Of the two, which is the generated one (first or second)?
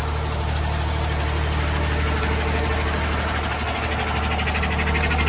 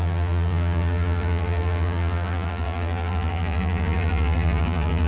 second